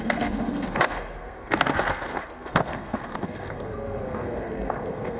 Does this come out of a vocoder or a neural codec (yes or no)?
yes